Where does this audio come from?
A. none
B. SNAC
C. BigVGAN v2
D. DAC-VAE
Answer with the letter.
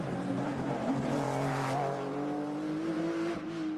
C